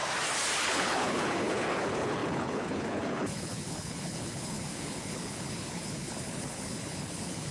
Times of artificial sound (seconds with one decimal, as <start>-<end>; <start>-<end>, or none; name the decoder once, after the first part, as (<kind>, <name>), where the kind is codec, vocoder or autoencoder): 0.6-7.5 (codec, HILCodec)